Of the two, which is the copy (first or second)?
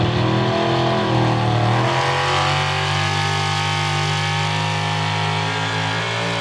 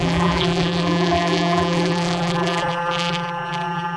second